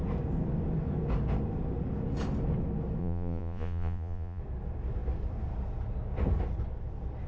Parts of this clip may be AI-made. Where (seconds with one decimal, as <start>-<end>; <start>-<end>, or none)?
3.0-4.4